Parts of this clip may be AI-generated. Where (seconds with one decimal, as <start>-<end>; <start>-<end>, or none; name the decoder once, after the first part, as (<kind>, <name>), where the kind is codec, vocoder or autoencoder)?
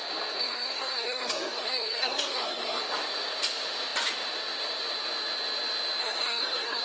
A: 0.4-2.8 (codec, SNAC); 6.0-6.8